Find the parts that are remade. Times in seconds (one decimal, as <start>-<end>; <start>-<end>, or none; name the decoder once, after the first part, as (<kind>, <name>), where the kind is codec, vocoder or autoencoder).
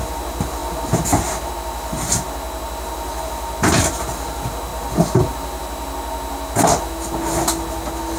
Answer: none